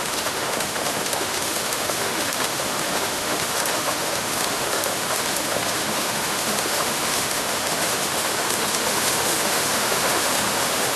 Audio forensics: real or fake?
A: fake